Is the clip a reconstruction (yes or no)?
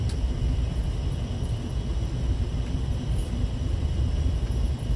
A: no